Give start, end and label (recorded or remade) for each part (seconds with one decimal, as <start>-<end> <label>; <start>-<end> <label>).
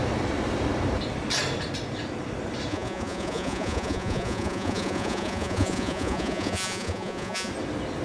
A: 0.0-2.7 recorded; 2.7-7.5 remade; 7.5-8.0 recorded